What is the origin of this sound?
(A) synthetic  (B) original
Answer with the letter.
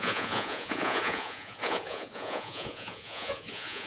A